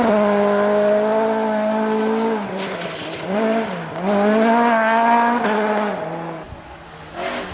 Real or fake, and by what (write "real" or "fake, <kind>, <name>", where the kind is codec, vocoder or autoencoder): real